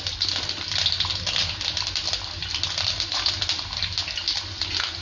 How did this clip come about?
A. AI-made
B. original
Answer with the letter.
B